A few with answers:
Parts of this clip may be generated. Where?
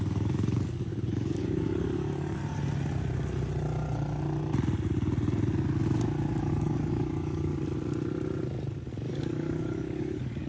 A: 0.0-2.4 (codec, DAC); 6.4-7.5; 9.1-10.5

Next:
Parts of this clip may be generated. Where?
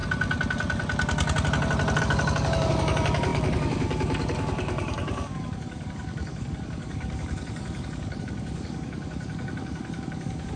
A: 2.0-10.6 (codec, DAC)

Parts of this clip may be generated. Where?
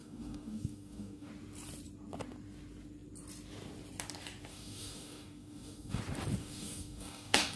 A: 0.0-1.3 (codec, DAC); 4.5-6.0; 6.4-7.6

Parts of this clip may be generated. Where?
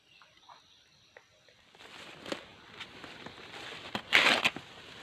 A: none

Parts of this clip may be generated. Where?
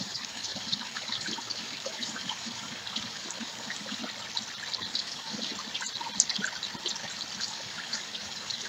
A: 0.0-4.0 (codec, DAC); 4.9-5.5; 7.4-8.7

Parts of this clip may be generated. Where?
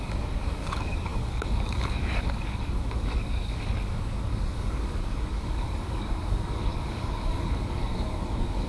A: 0.0-8.7 (codec, DAC)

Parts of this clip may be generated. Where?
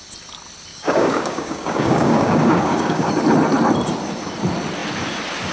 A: 0.7-3.1 (codec, DAC)